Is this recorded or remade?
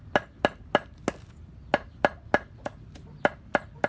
recorded